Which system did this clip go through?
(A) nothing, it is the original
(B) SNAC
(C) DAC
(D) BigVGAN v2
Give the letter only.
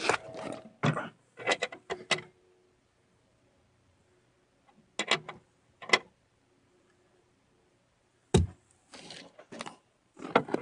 A